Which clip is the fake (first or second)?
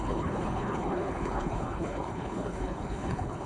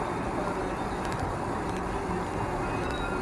first